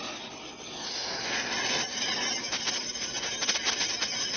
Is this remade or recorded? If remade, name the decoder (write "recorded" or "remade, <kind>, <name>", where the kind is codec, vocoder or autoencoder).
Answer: recorded